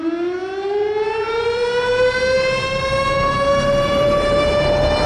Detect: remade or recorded remade